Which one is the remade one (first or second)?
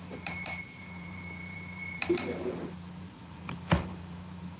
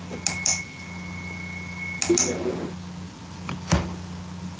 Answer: first